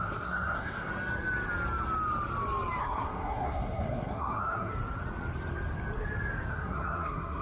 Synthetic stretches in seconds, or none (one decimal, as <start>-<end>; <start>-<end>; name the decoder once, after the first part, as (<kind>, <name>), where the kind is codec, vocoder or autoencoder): 0.0-0.9 (codec, SNAC); 2.8-4.7; 6.5-7.4